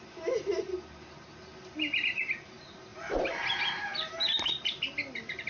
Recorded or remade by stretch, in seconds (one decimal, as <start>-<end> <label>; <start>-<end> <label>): 0.0-5.5 recorded